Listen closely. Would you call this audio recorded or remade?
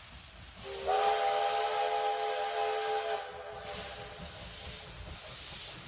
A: recorded